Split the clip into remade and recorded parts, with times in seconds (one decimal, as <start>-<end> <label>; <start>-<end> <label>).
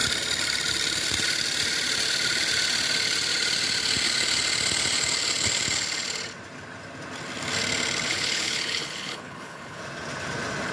0.0-8.1 recorded; 8.1-9.8 remade; 9.8-10.7 recorded